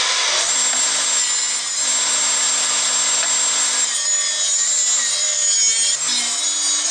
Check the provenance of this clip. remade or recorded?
recorded